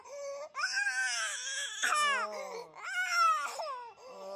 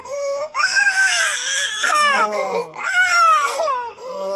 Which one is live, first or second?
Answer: first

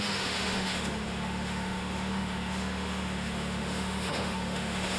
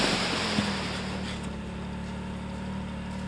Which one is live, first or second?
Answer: second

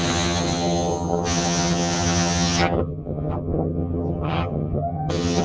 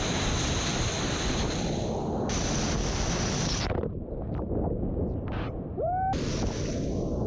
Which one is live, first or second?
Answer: second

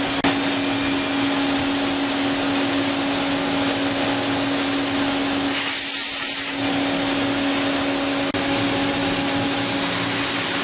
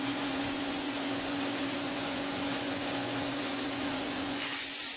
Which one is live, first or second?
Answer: first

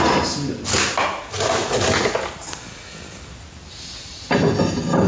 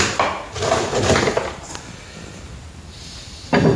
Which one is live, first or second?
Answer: first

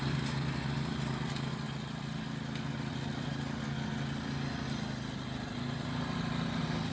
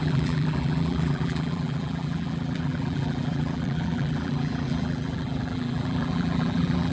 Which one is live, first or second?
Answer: first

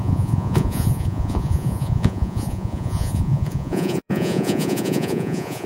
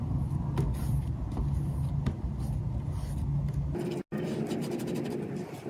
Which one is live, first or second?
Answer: second